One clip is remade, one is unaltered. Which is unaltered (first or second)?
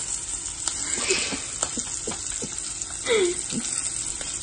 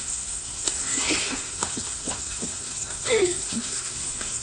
first